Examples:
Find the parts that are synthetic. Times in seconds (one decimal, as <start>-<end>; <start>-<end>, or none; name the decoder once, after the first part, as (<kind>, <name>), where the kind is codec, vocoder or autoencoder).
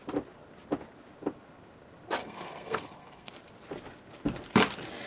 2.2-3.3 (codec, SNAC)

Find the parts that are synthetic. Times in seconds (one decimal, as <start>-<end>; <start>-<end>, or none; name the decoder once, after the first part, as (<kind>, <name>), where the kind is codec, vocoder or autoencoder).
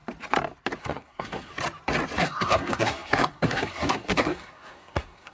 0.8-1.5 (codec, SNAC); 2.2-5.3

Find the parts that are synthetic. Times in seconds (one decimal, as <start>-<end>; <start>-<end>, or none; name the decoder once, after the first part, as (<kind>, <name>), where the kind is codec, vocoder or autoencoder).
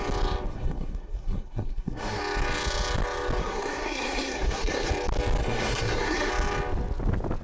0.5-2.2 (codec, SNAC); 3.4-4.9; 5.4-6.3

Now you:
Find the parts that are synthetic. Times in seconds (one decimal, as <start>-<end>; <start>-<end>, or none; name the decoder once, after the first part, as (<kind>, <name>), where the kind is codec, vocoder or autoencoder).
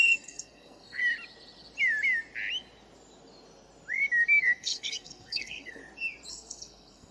0.0-1.0 (codec, SNAC); 4.4-5.8; 6.3-7.1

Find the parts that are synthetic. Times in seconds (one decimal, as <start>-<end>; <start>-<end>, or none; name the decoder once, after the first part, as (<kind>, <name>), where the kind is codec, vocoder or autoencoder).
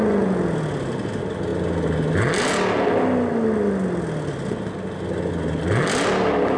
none